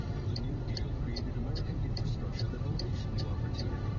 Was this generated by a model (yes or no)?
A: yes